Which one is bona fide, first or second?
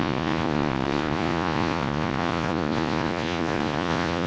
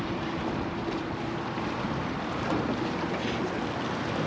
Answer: second